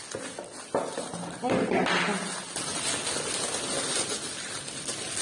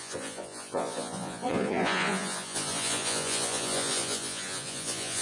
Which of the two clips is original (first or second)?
first